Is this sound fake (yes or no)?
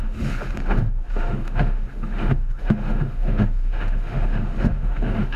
yes